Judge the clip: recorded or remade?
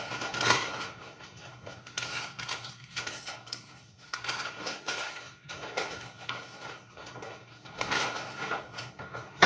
remade